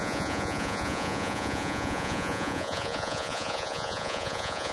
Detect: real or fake fake